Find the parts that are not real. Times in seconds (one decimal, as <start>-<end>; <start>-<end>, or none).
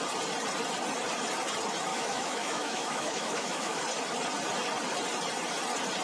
1.9-3.8